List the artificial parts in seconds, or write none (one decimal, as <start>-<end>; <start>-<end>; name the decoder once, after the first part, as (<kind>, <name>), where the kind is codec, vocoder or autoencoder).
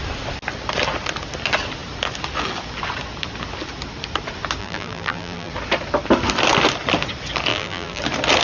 4.6-5.5 (vocoder, BigVGAN v2); 7.5-8.0